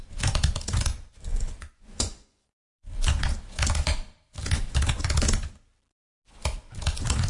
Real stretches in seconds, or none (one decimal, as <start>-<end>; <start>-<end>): 0.0-1.3; 2.9-7.3

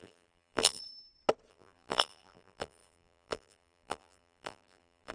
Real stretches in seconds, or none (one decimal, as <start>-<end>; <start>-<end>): 0.8-1.5

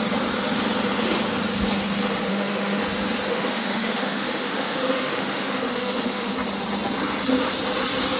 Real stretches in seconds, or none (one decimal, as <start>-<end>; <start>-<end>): 0.0-2.3; 2.8-3.3; 6.3-8.2

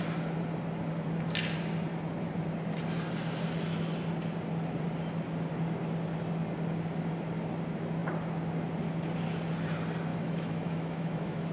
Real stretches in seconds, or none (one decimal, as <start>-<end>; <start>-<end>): 0.0-10.1